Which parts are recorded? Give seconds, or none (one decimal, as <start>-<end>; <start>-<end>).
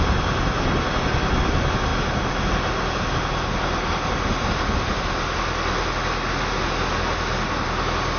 0.0-8.2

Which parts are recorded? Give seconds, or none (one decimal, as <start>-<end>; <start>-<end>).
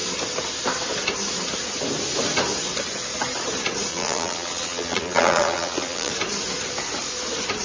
0.0-3.9; 6.1-7.6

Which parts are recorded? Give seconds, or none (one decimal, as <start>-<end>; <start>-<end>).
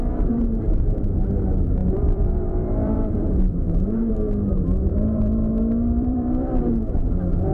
0.0-1.8; 4.1-4.9; 6.6-7.5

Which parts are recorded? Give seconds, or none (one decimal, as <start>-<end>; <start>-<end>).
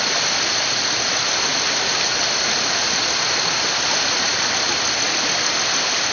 1.5-3.7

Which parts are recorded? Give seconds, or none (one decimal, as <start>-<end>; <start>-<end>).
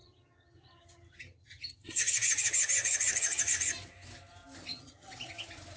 3.5-4.7; 5.3-5.8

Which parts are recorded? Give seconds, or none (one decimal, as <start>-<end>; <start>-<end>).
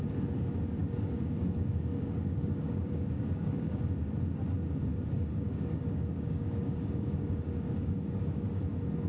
0.0-0.8; 3.8-4.9; 8.6-9.1